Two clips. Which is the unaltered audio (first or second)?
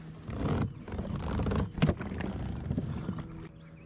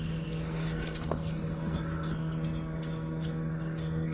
first